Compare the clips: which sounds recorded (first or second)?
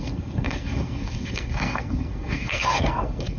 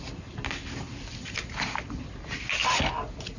second